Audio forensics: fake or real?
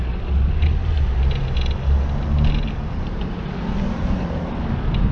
real